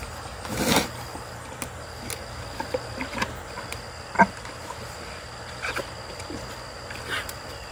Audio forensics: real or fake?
real